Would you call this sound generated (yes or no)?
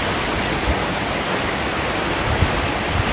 no